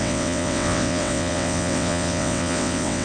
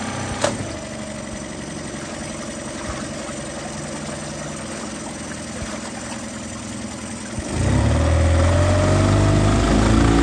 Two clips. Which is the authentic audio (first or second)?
second